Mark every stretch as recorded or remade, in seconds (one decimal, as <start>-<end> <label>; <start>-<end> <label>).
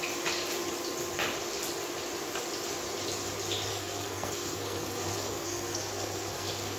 0.0-3.7 recorded; 3.7-6.8 remade